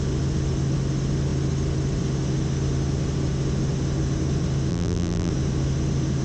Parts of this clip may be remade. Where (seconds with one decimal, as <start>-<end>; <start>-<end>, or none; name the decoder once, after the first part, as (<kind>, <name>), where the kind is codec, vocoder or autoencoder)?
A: 4.7-5.3 (vocoder, BigVGAN v2)